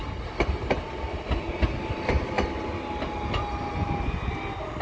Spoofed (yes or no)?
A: no